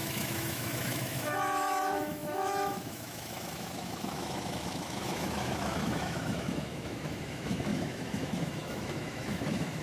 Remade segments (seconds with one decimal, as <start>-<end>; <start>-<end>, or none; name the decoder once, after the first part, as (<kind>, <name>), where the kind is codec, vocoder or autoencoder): 0.0-9.8 (autoencoder, DAC-VAE)